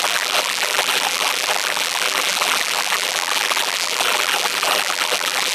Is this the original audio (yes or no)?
no